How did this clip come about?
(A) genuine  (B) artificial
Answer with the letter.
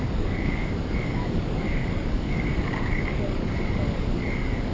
B